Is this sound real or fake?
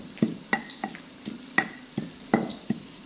real